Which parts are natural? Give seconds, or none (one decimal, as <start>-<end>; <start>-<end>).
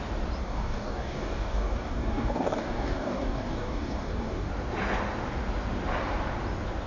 0.0-0.4; 4.5-6.9